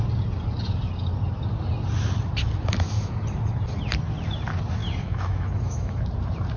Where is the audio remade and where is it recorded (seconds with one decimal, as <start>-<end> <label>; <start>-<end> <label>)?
0.0-4.8 recorded; 4.8-6.0 remade; 6.0-6.6 recorded

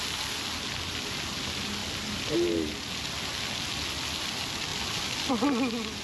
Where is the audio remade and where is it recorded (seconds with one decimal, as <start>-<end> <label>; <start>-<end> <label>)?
0.0-6.0 recorded

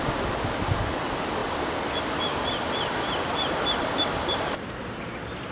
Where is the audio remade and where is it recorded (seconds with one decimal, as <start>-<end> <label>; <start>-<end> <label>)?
0.0-1.4 recorded; 1.4-4.7 remade; 4.7-5.5 recorded

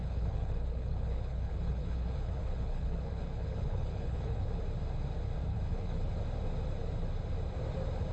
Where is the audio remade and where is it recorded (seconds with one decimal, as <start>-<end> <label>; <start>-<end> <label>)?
0.0-4.6 remade; 4.6-5.5 recorded; 5.5-6.1 remade; 6.1-8.1 recorded